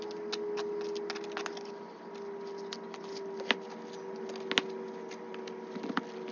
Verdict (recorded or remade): recorded